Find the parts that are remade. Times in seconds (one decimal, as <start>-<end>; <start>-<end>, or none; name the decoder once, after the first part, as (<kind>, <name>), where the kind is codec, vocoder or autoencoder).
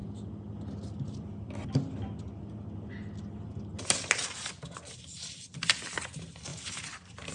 none